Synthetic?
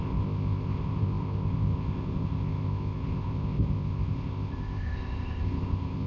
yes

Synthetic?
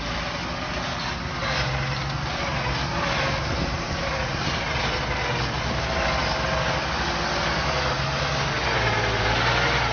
no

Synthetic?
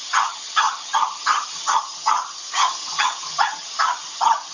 yes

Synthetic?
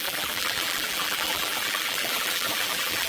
yes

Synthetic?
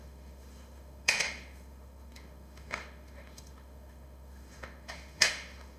yes